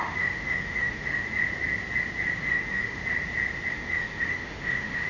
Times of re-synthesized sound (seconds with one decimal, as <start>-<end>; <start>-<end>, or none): 0.0-1.4; 2.4-3.0; 3.7-5.1

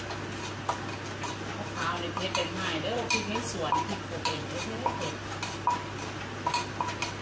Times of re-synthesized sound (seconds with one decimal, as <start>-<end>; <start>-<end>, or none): none

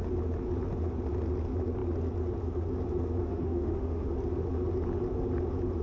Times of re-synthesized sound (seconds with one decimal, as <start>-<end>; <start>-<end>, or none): 3.2-4.1

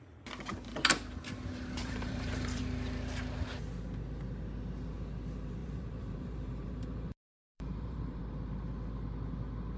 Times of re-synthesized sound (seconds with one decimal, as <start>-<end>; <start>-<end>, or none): 1.8-2.6; 5.6-8.2

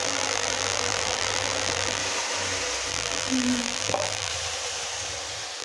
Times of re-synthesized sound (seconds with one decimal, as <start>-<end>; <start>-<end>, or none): 0.0-2.0; 2.9-4.3

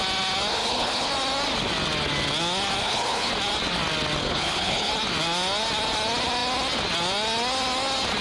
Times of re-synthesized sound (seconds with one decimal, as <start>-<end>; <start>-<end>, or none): 0.5-1.1; 2.8-3.3; 4.2-4.9

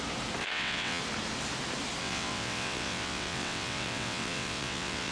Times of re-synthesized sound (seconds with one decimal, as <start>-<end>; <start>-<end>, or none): 0.4-1.0; 2.0-5.1

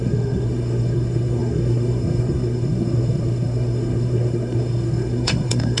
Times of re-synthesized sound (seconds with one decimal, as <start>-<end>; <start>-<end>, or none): 0.0-5.8